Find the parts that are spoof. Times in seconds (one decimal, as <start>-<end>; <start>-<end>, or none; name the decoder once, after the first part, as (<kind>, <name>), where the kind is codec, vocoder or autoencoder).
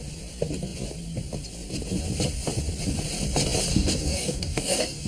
3.7-5.1 (codec, DAC)